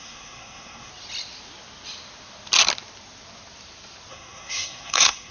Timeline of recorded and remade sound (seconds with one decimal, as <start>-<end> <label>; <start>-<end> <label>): 0.0-0.9 remade; 0.9-4.1 recorded; 4.1-5.3 remade